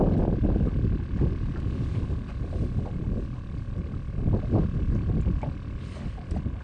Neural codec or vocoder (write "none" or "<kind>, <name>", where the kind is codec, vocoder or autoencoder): none